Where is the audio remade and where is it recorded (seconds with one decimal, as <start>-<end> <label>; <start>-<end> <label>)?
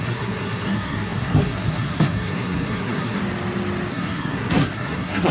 0.0-3.2 remade; 3.2-3.9 recorded; 3.9-5.3 remade